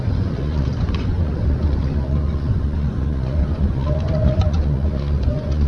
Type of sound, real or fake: fake